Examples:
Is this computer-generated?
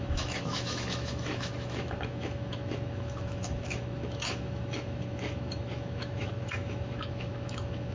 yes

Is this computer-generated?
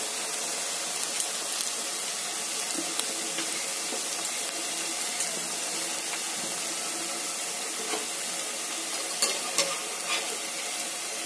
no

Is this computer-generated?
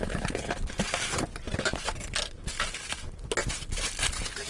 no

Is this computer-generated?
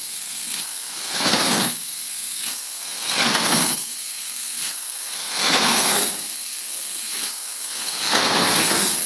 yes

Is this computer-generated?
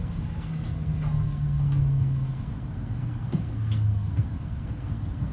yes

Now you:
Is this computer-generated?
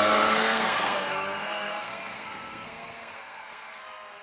yes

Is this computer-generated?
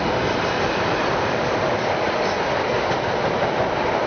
no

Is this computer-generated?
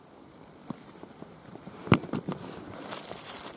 yes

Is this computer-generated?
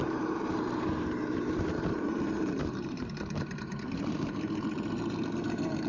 yes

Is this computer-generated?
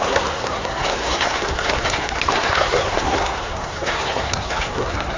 yes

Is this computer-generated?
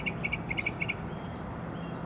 no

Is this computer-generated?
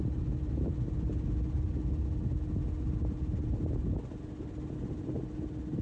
no